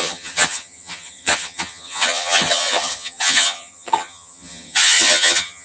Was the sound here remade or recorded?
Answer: remade